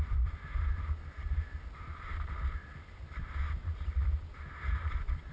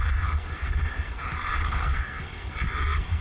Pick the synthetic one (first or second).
second